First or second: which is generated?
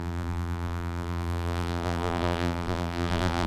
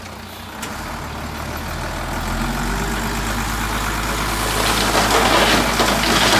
first